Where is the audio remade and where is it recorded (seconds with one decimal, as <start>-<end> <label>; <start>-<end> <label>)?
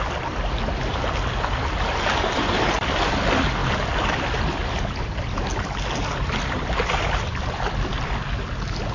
0.0-8.9 recorded